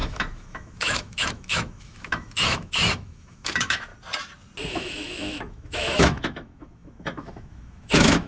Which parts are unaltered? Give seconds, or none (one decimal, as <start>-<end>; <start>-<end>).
3.9-4.7